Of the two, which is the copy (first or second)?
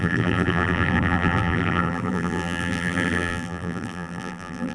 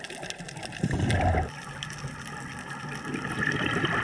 first